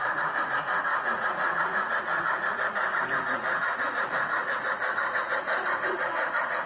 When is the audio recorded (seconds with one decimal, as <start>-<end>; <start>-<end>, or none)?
none

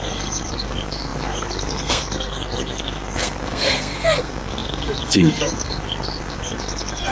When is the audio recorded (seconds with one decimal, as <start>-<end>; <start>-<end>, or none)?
none

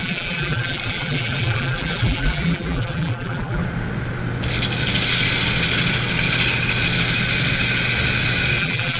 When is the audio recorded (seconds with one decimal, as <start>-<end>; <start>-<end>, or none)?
3.6-8.6

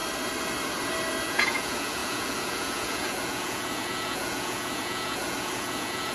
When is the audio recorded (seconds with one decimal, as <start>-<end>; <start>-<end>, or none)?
0.0-1.3